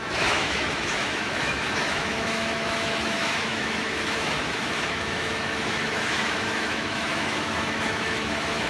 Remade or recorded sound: remade